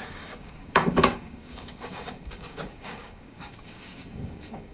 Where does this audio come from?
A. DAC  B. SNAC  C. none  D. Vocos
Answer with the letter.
A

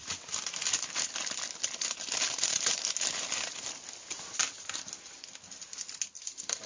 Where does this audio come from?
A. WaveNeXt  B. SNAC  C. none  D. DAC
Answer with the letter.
C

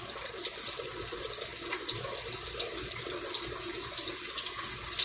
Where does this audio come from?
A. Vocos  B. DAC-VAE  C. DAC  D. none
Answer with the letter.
D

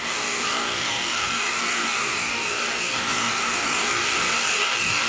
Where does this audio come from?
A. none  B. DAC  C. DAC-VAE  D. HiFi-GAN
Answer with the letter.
B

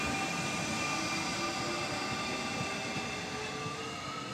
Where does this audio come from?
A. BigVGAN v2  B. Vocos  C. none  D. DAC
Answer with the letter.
C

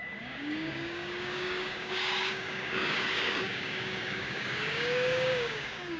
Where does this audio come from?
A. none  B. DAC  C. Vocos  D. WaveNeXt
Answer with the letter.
B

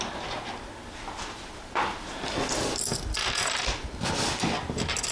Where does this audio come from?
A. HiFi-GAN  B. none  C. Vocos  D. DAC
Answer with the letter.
B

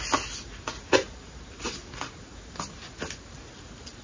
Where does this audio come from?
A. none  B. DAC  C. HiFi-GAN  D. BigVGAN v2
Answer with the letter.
A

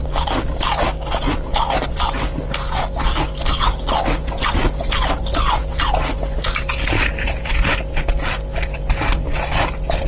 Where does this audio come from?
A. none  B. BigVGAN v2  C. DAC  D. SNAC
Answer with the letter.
A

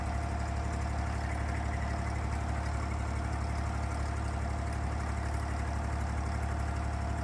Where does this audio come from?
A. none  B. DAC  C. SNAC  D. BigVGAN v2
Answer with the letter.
A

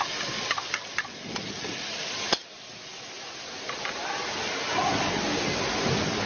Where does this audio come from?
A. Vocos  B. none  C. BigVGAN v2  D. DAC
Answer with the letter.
B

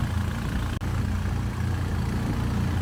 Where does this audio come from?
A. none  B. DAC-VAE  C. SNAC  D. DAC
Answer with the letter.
A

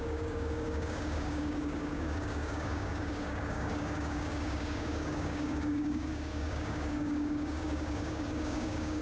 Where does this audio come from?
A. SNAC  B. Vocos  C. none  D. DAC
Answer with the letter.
D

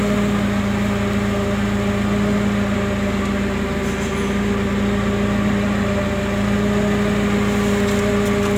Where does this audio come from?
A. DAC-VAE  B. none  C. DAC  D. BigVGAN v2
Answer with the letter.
B